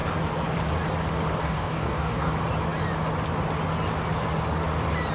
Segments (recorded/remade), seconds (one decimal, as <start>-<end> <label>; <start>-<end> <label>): 0.0-1.4 recorded; 1.4-2.3 remade; 2.3-5.1 recorded